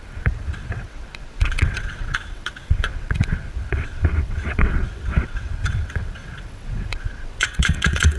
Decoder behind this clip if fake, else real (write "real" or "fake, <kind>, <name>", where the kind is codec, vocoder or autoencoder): fake, vocoder, WaveNeXt